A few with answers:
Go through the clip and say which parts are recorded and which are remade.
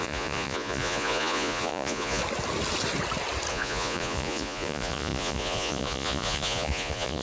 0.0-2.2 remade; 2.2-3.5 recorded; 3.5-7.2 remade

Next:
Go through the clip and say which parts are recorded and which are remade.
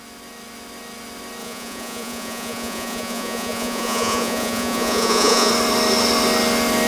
0.0-1.4 recorded; 1.4-5.5 remade; 5.5-6.9 recorded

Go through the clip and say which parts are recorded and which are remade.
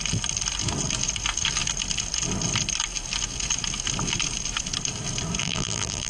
0.0-5.4 recorded; 5.4-6.1 remade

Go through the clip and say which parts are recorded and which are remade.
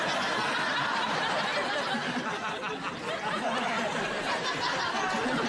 0.0-0.7 recorded; 0.7-1.2 remade; 1.2-5.5 recorded